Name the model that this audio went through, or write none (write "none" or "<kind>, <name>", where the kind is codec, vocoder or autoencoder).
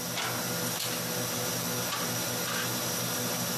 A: none